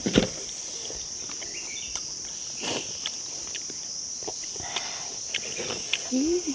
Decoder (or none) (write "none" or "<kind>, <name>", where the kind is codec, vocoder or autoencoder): vocoder, BigVGAN v2